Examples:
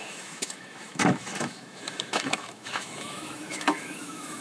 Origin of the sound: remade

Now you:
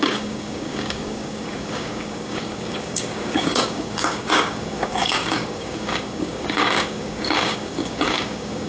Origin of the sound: remade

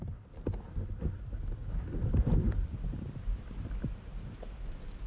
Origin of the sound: remade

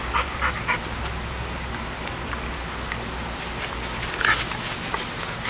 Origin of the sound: recorded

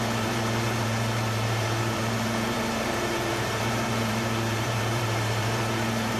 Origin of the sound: remade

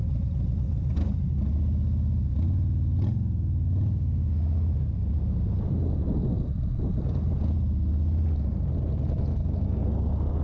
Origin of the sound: recorded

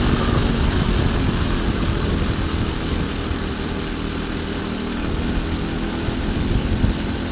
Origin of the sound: recorded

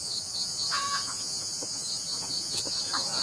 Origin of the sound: remade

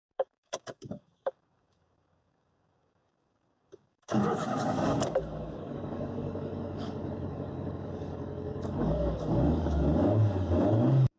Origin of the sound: remade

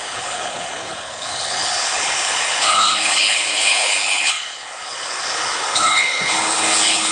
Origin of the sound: remade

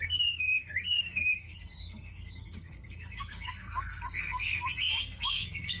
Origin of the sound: remade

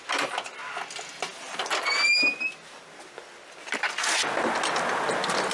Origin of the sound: recorded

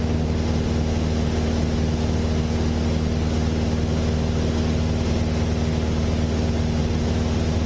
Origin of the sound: recorded